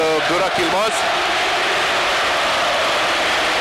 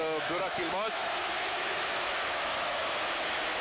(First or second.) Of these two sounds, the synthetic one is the second